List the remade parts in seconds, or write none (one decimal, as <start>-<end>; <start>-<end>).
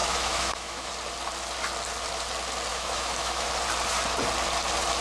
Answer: 0.0-0.9; 2.7-3.5